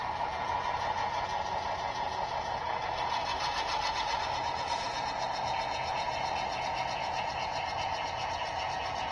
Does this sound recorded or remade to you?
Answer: remade